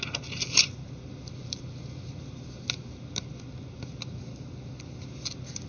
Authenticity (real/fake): real